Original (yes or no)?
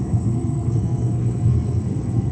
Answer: no